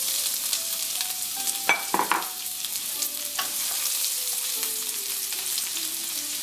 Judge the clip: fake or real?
fake